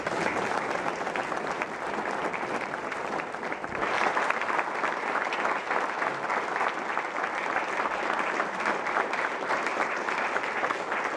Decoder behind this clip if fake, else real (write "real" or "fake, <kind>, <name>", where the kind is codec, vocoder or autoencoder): real